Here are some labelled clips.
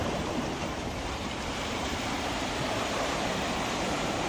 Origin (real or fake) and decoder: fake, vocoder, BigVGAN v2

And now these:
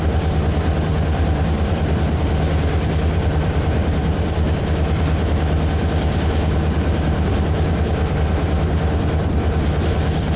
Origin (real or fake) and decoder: fake, vocoder, BigVGAN v2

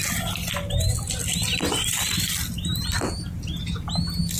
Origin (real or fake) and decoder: real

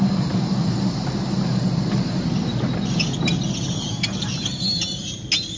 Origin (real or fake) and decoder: real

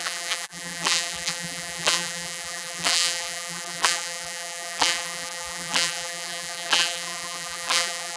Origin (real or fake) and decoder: fake, vocoder, BigVGAN v2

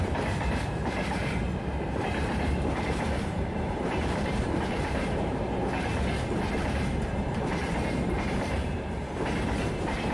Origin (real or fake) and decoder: fake, vocoder, BigVGAN v2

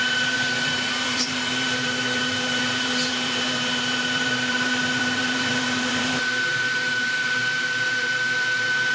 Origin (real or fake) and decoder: fake, vocoder, BigVGAN v2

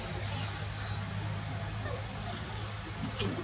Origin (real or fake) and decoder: real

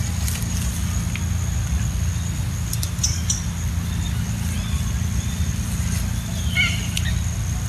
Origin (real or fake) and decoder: real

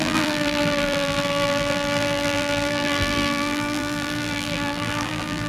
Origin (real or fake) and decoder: fake, vocoder, BigVGAN v2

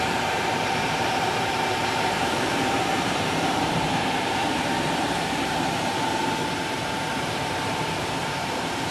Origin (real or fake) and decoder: fake, vocoder, BigVGAN v2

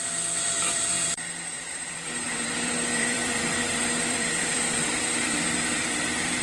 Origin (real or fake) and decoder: fake, vocoder, BigVGAN v2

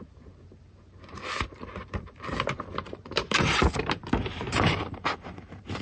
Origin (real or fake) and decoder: fake, vocoder, BigVGAN v2